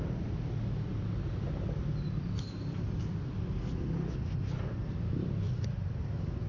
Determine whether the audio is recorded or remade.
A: recorded